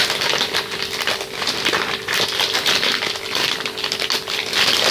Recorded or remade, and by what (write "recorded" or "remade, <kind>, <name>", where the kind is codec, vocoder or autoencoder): recorded